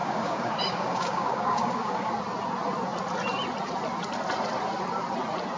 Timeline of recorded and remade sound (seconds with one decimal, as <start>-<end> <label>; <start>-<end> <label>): 0.0-2.1 remade; 2.1-5.6 recorded